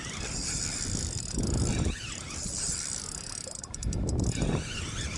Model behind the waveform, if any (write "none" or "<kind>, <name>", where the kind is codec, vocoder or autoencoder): vocoder, BigVGAN v2